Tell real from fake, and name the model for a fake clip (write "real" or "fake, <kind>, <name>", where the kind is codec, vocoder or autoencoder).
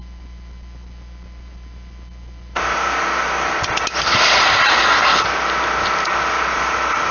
real